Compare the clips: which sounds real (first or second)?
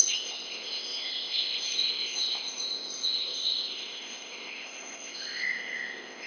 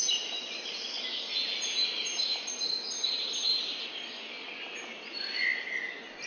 second